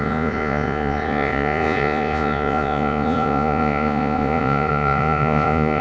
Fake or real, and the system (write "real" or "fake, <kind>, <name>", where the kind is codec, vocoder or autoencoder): fake, vocoder, Vocos